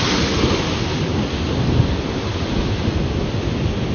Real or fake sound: real